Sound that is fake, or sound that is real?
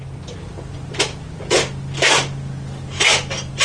real